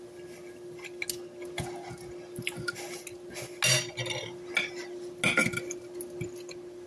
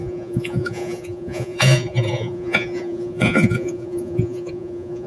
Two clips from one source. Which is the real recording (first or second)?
first